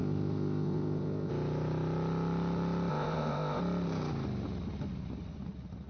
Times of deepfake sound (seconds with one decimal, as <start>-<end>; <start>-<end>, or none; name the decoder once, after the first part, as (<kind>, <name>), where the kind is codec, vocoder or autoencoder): 0.0-1.3 (codec, ZipCodec); 2.9-3.6